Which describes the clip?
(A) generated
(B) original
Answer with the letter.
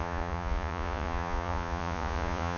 A